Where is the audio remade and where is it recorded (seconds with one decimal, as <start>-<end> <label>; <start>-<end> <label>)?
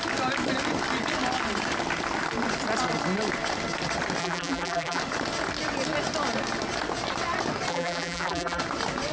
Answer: 0.0-4.2 recorded; 4.2-5.0 remade; 5.0-7.7 recorded; 7.7-8.6 remade; 8.6-9.1 recorded